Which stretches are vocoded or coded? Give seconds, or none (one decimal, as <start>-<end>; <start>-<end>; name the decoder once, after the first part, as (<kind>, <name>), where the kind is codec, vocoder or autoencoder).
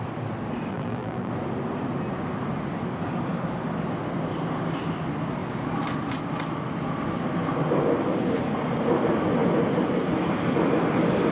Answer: 0.7-1.3 (vocoder, BigVGAN v2)